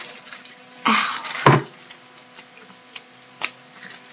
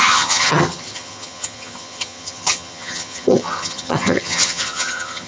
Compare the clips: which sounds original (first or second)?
first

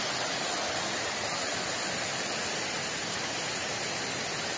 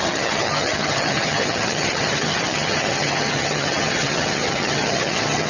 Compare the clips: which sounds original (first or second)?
first